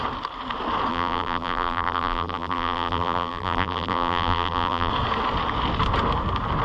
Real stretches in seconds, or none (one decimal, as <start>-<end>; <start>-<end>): 0.0-0.9; 4.9-6.6